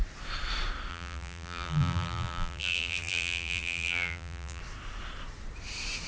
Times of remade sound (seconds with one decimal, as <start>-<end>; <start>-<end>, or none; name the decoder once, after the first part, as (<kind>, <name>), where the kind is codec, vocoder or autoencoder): 0.9-4.6 (vocoder, BigVGAN v2)